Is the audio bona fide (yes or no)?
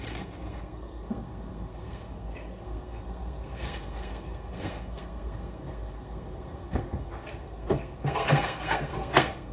no